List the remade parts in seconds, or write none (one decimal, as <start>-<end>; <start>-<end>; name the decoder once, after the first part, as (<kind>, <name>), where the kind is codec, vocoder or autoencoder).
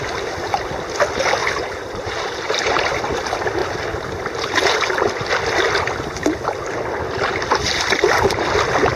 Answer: 1.4-3.0 (vocoder, BigVGAN v2); 3.6-4.7